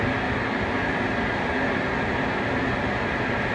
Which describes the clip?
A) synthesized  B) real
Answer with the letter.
B